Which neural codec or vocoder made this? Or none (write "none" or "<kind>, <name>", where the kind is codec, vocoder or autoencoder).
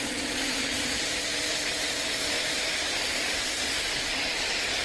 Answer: vocoder, BigVGAN v2